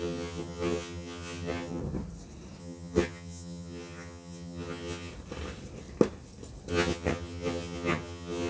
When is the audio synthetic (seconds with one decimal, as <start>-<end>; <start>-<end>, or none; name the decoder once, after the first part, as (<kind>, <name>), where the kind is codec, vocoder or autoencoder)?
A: 0.0-1.8 (vocoder, HiFi-GAN); 2.6-5.1; 6.7-8.5